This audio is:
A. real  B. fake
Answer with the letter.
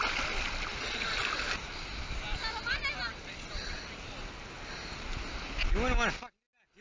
A